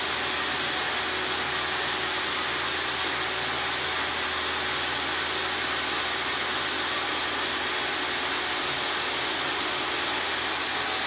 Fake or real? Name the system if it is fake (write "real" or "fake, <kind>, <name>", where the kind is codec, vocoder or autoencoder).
real